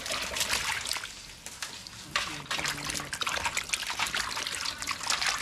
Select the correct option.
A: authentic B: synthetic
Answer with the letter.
A